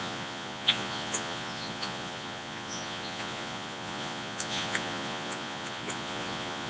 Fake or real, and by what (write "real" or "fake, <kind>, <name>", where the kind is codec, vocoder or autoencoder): fake, vocoder, Vocos